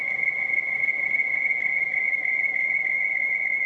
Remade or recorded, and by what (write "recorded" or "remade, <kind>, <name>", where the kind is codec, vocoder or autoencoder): recorded